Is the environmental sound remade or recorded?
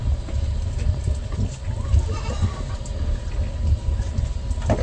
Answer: recorded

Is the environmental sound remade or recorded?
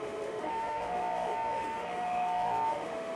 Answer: remade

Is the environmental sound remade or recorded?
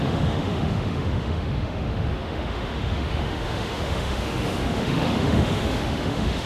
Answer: remade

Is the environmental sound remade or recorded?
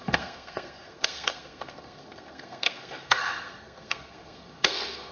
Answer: remade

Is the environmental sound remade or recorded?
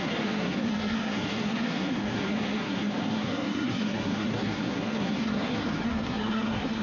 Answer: remade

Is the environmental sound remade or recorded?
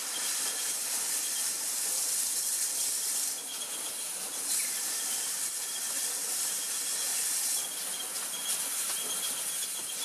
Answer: remade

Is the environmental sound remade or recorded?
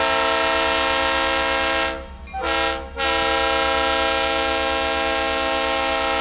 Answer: recorded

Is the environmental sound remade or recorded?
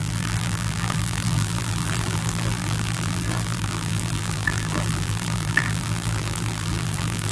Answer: remade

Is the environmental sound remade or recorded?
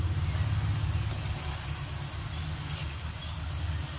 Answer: recorded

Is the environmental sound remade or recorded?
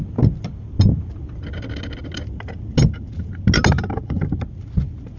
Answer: recorded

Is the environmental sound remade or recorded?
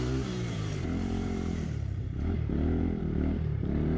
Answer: remade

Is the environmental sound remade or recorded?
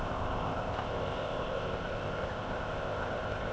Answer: remade